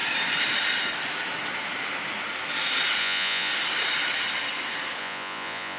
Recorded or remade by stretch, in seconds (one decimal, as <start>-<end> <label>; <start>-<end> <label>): 0.0-3.0 recorded; 3.0-3.5 remade; 3.5-5.0 recorded; 5.0-5.8 remade